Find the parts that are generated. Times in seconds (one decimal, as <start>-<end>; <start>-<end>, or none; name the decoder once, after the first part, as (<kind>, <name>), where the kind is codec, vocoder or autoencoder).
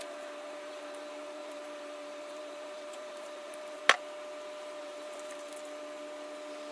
0.0-3.8 (vocoder, BigVGAN v2); 4.8-5.5